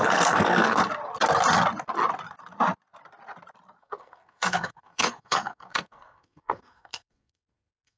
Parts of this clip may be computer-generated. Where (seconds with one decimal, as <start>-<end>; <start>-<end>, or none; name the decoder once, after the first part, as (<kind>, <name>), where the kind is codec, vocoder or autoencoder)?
0.0-0.8 (codec, SNAC); 3.8-8.0